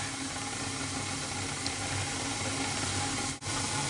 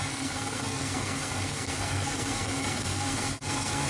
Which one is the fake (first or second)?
second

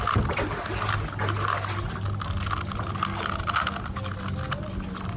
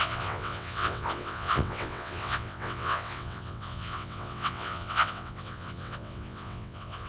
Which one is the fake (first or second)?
second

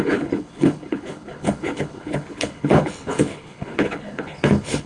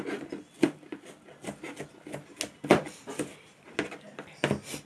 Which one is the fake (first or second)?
first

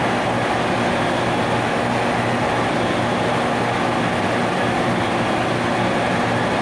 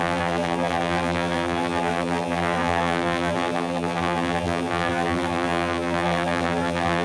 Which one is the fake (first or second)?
second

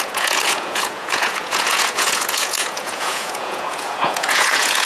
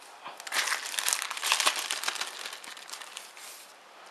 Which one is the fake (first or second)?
first